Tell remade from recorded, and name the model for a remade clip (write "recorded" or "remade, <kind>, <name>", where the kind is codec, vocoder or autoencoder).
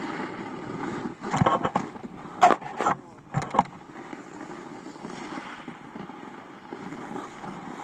recorded